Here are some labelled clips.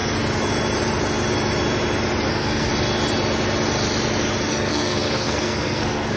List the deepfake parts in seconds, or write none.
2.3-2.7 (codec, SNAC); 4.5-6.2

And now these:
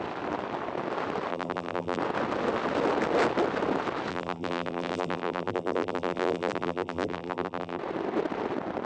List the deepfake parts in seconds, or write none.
1.3-2.0 (vocoder, BigVGAN v2); 4.1-7.8

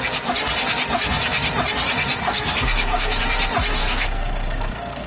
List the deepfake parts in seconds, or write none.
2.2-3.2 (codec, SNAC); 3.8-5.1

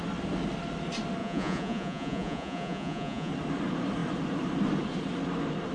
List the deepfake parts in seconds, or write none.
1.2-3.3 (vocoder, Vocos)